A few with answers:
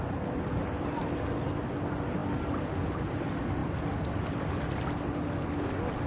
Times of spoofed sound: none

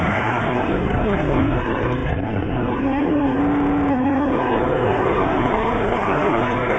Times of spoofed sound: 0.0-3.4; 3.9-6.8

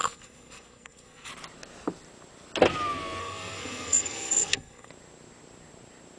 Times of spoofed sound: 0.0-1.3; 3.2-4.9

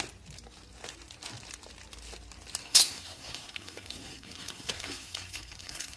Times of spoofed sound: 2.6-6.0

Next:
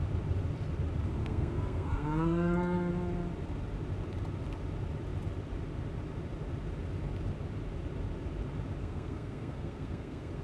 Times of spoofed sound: 1.2-2.9; 8.8-10.4

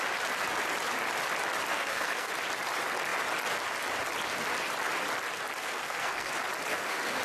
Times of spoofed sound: 1.7-2.3; 5.6-6.3; 6.7-7.2